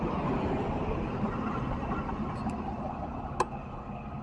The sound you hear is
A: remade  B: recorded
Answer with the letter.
B